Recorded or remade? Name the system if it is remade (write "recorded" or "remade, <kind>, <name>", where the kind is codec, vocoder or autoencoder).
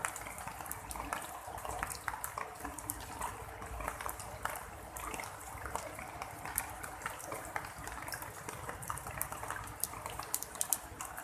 remade, vocoder, BigVGAN v2